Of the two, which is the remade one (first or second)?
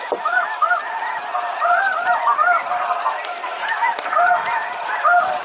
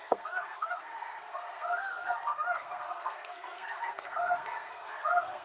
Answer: second